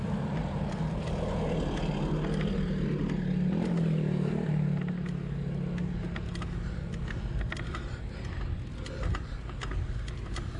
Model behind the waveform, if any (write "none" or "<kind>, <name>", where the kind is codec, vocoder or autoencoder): none